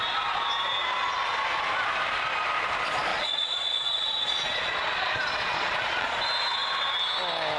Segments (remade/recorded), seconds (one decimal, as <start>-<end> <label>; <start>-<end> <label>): 0.0-3.1 recorded; 3.1-6.2 remade; 6.2-7.6 recorded